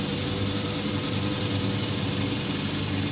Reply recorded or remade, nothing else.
remade